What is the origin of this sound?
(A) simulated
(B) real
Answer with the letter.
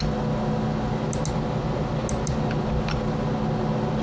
B